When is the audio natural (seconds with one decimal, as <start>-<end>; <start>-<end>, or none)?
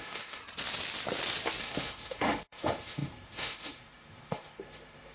0.4-1.6